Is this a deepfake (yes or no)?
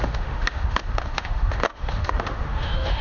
yes